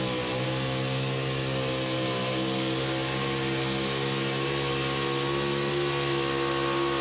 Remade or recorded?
recorded